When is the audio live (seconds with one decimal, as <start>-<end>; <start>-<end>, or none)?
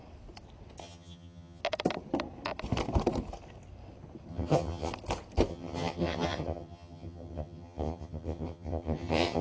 0.0-0.8; 1.6-4.3; 4.9-5.5